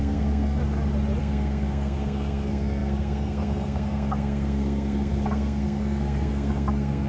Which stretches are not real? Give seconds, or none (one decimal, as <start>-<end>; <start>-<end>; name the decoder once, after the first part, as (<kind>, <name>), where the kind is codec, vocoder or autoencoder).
0.0-0.6 (codec, SNAC); 1.2-7.1